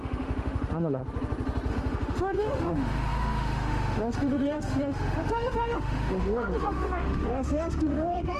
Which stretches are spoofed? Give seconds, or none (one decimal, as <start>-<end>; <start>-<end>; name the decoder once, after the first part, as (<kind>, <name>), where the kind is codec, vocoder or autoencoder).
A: 0.0-1.0 (autoencoder, DAC-VAE); 1.7-8.4